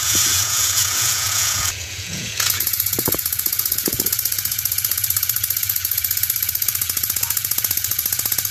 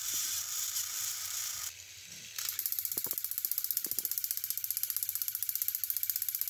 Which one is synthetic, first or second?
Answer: first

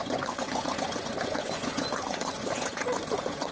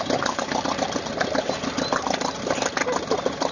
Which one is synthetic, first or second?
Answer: first